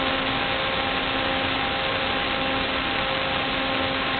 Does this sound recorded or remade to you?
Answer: recorded